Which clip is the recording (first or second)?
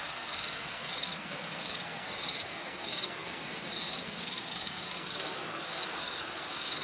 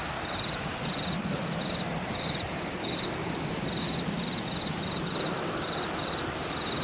second